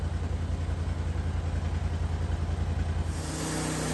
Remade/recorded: recorded